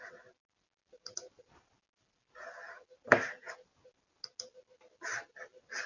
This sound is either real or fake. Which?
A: real